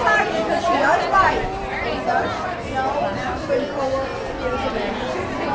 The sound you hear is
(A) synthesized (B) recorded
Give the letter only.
B